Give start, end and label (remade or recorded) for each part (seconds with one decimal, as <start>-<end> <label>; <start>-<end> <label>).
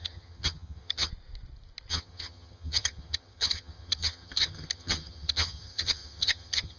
0.0-1.1 remade; 1.1-1.9 recorded; 1.9-6.8 remade